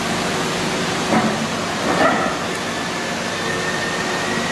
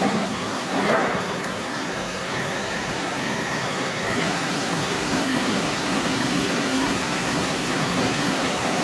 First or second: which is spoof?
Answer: second